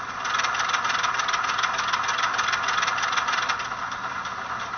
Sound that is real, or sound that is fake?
real